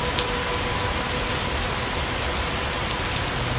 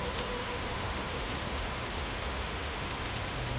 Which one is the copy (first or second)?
second